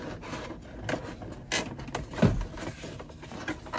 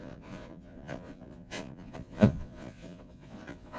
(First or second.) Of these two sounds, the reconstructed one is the second